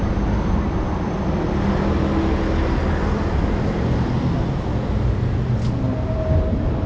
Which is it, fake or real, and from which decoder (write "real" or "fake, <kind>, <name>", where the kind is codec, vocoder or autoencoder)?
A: real